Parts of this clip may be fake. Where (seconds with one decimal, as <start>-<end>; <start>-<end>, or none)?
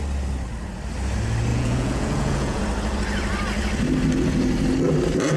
1.5-2.6